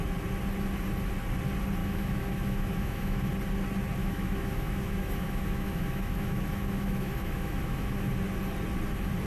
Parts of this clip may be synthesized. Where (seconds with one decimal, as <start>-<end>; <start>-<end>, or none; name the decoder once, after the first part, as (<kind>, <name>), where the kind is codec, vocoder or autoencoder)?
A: 1.8-3.3 (autoencoder, DAC-VAE); 4.0-8.1